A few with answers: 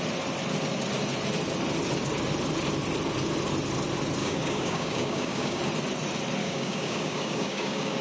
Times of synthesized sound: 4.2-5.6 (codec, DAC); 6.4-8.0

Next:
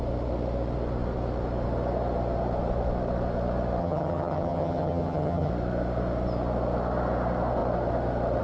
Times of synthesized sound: 3.8-5.5 (vocoder, HiFi-GAN)

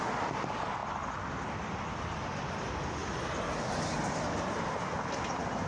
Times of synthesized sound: none

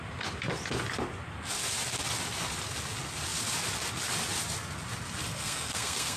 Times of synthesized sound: 5.3-6.2 (codec, SNAC)

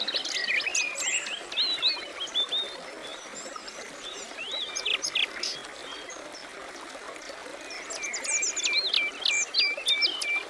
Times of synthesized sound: 3.1-4.6 (vocoder, BigVGAN v2)

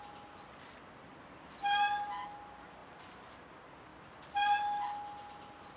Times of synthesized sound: none